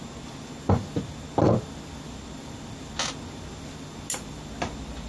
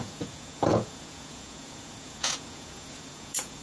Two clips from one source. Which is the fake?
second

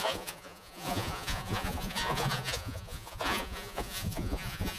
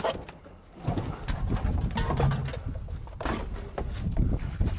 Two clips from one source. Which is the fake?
first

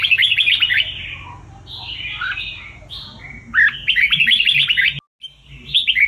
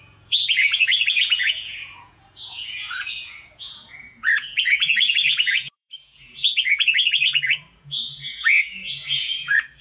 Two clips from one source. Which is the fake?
second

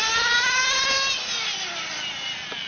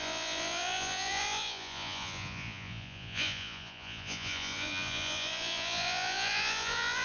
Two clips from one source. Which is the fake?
second